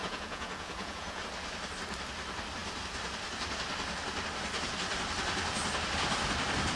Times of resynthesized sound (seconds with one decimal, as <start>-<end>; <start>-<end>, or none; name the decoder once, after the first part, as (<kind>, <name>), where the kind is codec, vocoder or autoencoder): 0.0-1.2 (vocoder, Vocos)